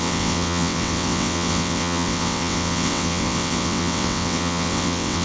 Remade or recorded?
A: remade